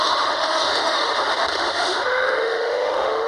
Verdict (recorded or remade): remade